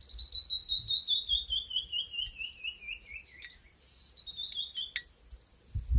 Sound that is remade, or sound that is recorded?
recorded